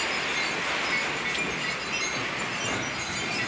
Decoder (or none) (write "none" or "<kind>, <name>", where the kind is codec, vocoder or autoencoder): none